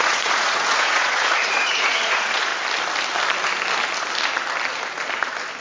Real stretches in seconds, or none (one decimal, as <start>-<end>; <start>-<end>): 2.5-5.6